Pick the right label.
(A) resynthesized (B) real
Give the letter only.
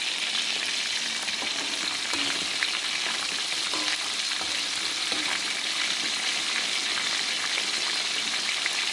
B